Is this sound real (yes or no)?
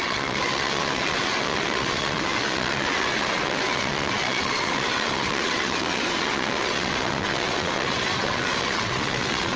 no